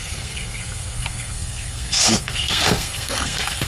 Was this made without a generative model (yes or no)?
no